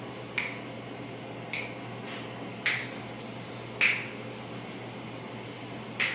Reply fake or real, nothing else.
real